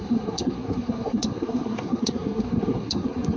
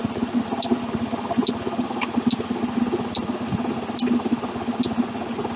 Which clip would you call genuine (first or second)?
second